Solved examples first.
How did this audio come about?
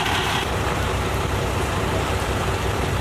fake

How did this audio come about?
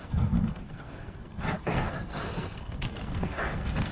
fake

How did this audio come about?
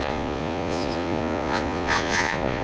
fake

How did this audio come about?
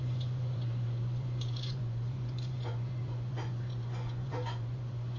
fake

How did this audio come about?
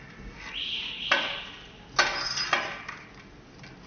real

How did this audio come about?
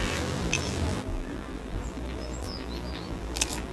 fake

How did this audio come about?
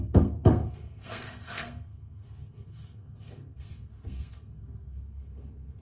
fake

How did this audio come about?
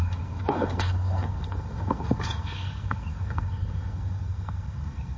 fake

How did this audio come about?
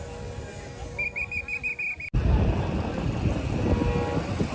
real